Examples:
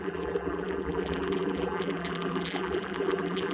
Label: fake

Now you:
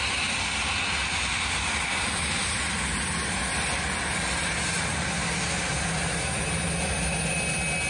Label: real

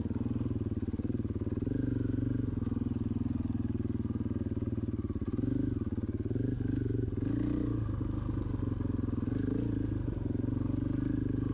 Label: real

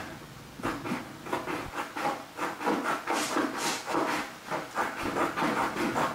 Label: real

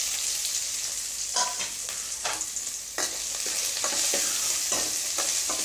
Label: real